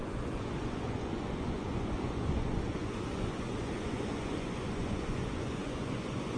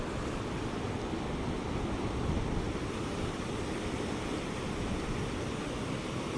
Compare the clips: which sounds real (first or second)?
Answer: second